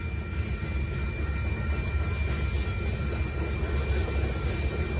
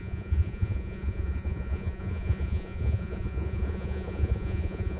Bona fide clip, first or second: first